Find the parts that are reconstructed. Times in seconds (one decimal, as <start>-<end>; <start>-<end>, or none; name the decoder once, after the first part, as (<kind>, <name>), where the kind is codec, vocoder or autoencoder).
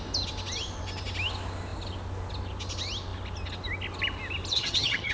4.5-5.1 (vocoder, HiFi-GAN)